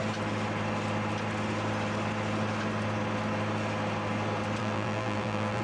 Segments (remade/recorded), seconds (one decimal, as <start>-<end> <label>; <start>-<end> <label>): 0.0-4.6 recorded; 4.6-5.6 remade